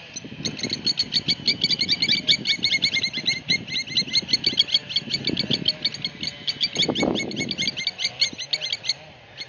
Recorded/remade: recorded